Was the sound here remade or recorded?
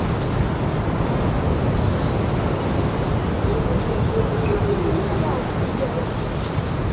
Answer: recorded